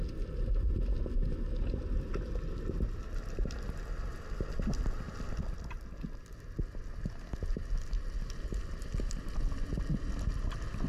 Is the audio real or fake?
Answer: real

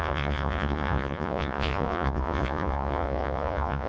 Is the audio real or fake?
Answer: fake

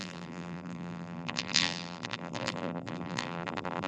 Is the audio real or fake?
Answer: fake